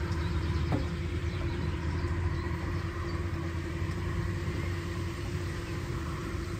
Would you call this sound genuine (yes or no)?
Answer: no